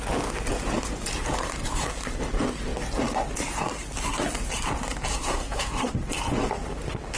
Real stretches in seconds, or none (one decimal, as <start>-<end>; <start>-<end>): 0.0-5.1; 5.9-7.2